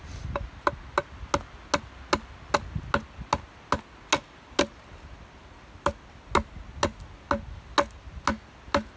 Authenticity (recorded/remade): recorded